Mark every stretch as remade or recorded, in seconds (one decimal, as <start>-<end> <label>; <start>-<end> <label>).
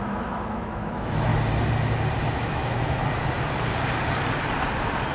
0.0-1.3 remade; 1.3-2.3 recorded; 2.3-3.0 remade; 3.0-5.1 recorded